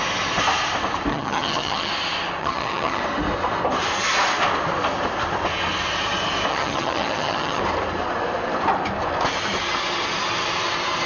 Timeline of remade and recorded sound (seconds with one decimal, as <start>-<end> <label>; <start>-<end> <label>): 0.0-1.1 recorded; 1.1-1.9 remade; 1.9-2.4 recorded; 2.4-3.0 remade; 3.0-6.5 recorded; 6.5-7.6 remade; 7.6-11.1 recorded